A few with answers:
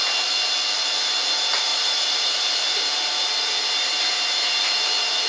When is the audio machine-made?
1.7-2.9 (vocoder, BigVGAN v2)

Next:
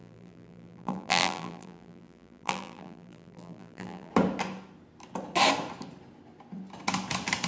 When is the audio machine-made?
0.0-4.1 (vocoder, BigVGAN v2)